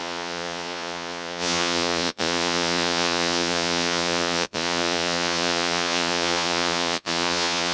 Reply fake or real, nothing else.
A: fake